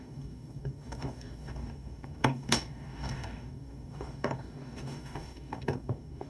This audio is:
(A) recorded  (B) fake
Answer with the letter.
B